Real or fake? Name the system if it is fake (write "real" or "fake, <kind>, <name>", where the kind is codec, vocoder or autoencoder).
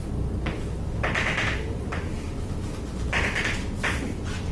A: real